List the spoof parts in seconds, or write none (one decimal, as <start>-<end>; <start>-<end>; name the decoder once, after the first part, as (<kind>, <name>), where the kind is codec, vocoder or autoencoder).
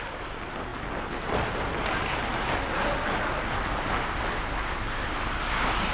none